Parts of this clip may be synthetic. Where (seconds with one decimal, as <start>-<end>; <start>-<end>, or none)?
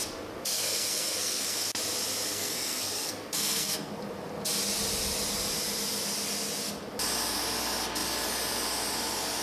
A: 0.5-1.7; 2.3-3.9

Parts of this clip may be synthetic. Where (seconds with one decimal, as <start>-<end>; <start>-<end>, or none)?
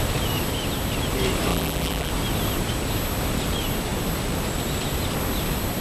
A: 1.5-2.1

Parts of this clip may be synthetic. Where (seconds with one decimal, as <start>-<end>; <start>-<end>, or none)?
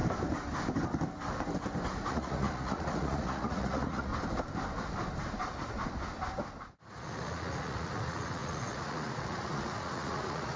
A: 2.1-4.1; 6.9-10.6